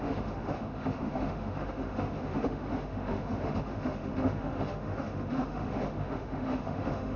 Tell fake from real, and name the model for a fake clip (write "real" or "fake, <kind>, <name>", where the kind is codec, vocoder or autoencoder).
fake, autoencoder, DAC-VAE